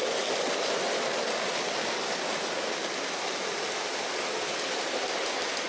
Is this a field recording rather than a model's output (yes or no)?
yes